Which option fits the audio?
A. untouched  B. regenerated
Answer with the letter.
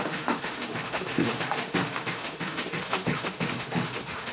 B